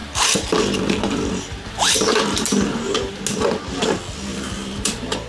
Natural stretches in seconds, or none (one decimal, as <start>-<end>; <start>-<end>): 3.2-4.3